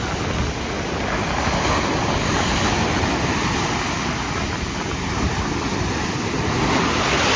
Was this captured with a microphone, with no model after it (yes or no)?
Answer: yes